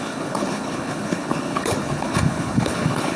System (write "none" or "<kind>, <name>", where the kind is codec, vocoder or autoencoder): codec, HILCodec